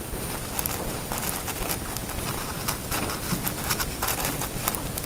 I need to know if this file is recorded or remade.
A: recorded